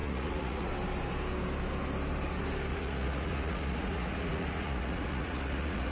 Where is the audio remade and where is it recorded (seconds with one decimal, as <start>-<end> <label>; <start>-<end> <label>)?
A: 0.0-0.7 remade; 0.7-2.7 recorded; 2.7-5.9 remade